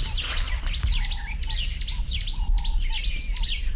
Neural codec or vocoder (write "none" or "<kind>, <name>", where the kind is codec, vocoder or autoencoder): none